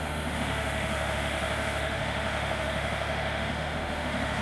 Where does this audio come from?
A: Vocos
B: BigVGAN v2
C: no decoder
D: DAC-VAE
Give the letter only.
D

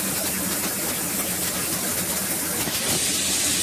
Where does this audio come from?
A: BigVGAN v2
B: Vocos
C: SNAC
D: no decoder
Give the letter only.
D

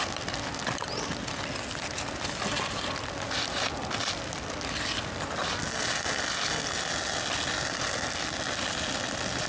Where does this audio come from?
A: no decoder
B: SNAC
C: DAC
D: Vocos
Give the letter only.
A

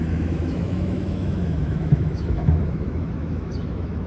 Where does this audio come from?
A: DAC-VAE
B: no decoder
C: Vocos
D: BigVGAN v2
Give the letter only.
A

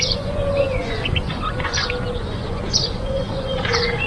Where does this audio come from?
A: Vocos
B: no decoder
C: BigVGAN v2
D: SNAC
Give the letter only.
A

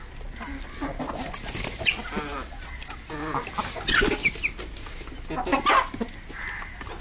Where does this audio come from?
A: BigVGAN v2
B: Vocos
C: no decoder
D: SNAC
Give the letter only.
C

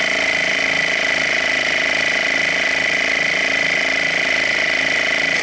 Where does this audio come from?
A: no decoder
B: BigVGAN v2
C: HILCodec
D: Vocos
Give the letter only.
A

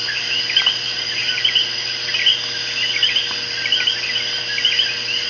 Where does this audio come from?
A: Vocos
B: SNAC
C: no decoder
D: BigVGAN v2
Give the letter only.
C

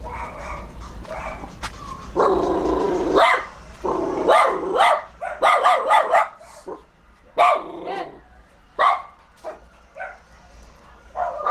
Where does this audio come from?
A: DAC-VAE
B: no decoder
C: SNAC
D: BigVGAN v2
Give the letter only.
D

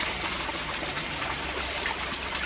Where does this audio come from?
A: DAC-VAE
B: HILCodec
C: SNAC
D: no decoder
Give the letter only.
D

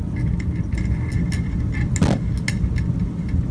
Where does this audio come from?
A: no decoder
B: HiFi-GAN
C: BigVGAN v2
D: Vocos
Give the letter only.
A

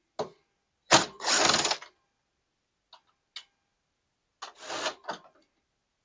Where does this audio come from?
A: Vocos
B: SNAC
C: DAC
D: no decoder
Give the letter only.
D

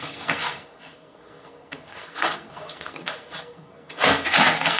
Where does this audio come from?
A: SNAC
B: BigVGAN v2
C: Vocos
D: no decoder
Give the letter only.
A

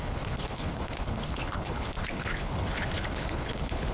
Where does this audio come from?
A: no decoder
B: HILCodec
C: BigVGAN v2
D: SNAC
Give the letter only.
B